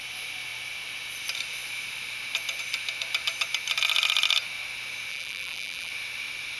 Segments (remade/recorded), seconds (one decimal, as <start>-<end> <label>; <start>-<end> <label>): 0.0-5.1 recorded; 5.1-5.9 remade; 5.9-6.6 recorded